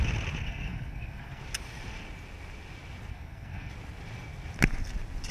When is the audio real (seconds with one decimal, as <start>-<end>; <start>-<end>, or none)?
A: 0.0-0.4; 1.4-3.1; 3.7-5.3